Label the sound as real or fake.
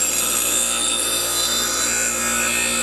real